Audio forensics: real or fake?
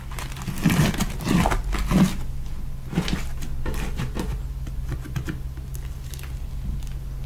real